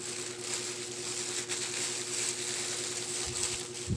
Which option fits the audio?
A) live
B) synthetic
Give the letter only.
A